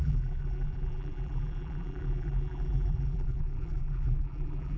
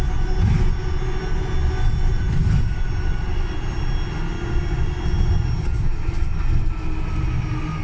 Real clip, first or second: second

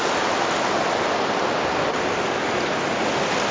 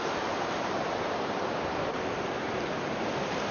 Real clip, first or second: first